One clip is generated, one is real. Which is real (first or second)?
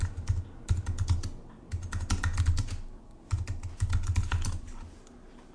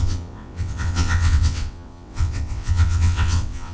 first